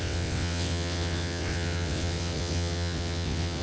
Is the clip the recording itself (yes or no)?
no